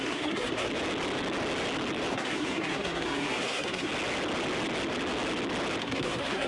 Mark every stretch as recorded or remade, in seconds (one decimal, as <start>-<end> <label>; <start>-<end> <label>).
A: 0.0-0.7 remade; 0.7-2.1 recorded; 2.1-3.9 remade; 3.9-5.8 recorded; 5.8-6.5 remade